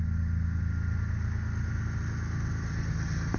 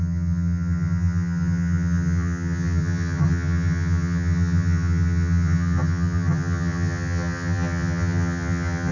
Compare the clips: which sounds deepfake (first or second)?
second